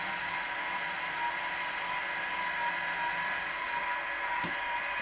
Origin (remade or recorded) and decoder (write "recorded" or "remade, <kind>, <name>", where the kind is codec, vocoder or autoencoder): recorded